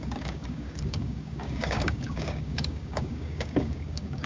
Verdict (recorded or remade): remade